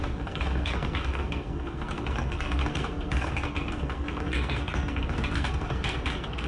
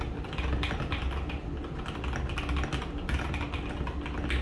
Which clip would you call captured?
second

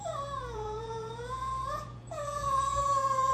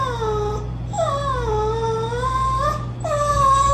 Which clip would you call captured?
second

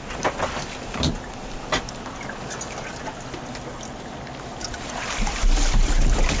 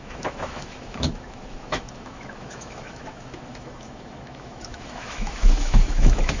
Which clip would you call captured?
first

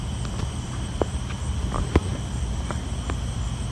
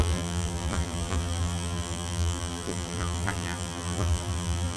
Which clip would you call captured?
first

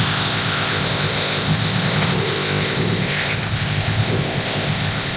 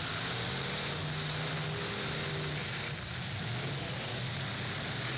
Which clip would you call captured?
second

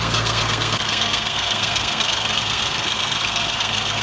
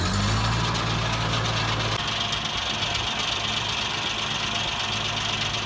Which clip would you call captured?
second